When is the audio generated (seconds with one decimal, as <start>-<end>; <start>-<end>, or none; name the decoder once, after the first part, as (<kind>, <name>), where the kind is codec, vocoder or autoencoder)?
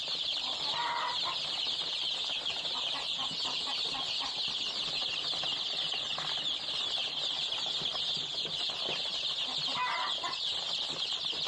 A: none